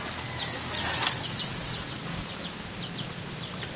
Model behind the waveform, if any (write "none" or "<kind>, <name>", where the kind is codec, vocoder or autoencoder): none